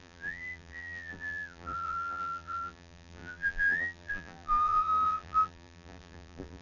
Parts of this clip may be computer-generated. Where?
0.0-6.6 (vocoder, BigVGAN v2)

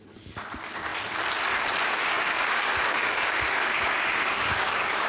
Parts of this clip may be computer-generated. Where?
2.0-5.1 (codec, DAC)

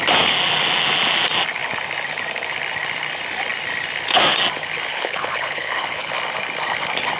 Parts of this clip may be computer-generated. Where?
4.9-6.1 (codec, HILCodec)

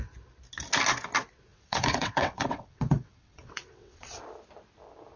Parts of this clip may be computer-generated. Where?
1.5-4.2 (vocoder, WaveNeXt)